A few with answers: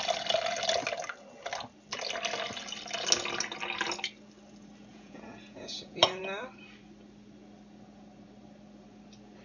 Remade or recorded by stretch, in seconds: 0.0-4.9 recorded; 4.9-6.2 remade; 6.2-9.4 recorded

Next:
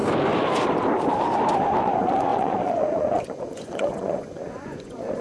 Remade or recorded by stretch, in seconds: 0.0-1.8 recorded; 1.8-5.2 remade

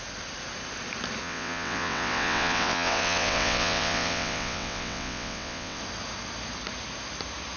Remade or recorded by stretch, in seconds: 0.0-1.2 recorded; 1.2-5.8 remade; 5.8-7.6 recorded

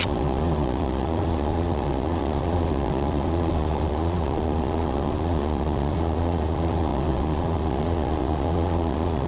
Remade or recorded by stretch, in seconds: 0.0-9.3 remade

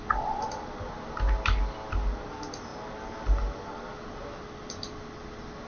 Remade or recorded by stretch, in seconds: 0.0-5.7 recorded

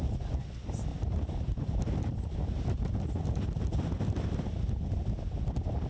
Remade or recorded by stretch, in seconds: 0.0-0.9 recorded; 0.9-2.4 remade; 2.4-5.9 recorded

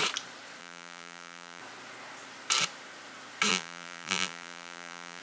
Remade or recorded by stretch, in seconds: 0.0-0.6 recorded; 0.6-1.6 remade; 1.6-3.5 recorded; 3.5-5.2 remade

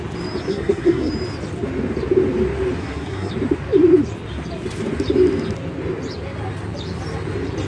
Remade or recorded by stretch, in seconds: 0.0-0.5 recorded; 0.5-1.1 remade; 1.1-2.8 recorded; 2.8-3.3 remade; 3.3-7.7 recorded